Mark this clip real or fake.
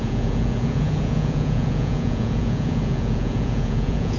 fake